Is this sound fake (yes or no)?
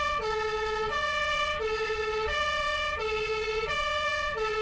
yes